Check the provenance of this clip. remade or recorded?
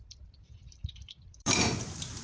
remade